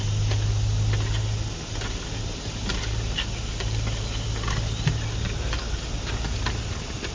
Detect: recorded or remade recorded